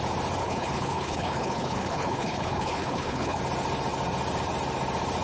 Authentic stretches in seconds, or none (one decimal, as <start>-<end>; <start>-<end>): 0.0-0.4; 3.4-5.2